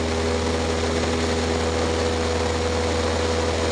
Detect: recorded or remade recorded